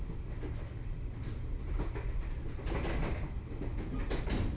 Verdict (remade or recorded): recorded